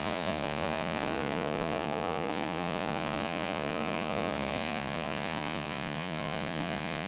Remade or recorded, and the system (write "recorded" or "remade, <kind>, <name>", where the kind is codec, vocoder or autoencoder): remade, vocoder, Vocos